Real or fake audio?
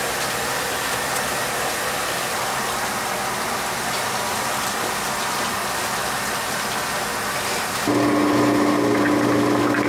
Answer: real